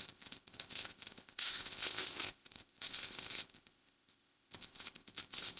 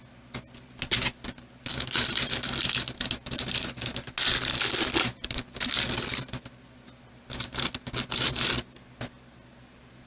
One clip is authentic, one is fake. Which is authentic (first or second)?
second